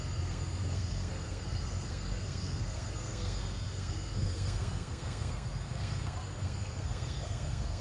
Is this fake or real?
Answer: fake